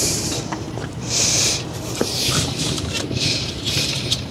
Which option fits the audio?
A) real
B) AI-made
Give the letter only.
B